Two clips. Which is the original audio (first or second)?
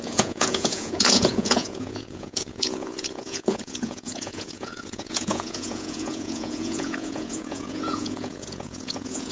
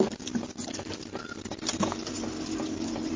second